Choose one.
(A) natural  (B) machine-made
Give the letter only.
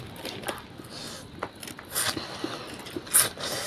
A